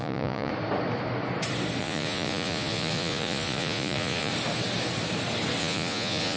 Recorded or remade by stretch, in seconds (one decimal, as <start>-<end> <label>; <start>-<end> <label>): 0.0-0.5 remade; 0.5-1.8 recorded; 1.8-4.3 remade; 4.3-5.6 recorded; 5.6-6.4 remade